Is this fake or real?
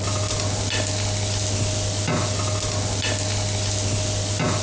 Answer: real